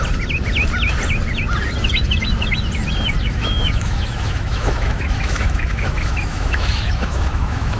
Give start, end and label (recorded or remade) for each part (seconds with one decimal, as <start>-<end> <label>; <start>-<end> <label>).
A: 0.0-3.2 recorded; 3.2-7.8 remade